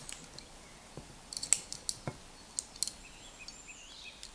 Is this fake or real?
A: real